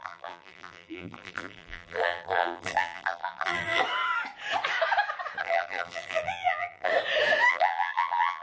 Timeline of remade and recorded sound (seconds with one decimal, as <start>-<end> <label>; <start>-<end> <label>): 0.0-3.8 remade; 3.8-5.4 recorded; 5.4-6.9 remade; 6.9-7.5 recorded; 7.5-8.4 remade